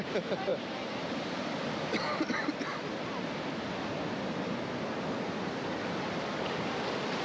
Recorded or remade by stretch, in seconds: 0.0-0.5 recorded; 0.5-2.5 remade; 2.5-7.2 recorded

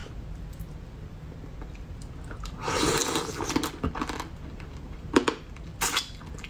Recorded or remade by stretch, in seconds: 0.0-2.5 recorded; 2.5-3.0 remade; 3.0-4.5 recorded; 4.5-5.7 remade; 5.7-6.5 recorded

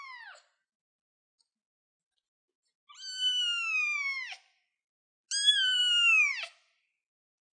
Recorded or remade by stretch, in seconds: 0.0-7.6 recorded

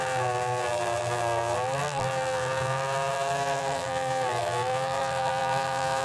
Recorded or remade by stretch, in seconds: 0.0-6.0 remade

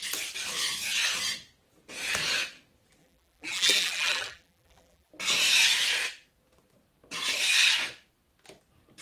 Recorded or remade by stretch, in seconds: 0.0-3.0 recorded; 3.0-5.1 remade; 5.1-9.0 recorded

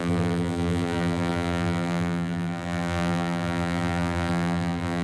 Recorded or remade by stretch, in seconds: 0.0-5.0 remade